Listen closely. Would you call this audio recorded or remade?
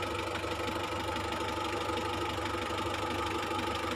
recorded